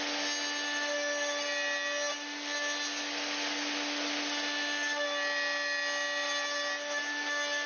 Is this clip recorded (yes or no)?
yes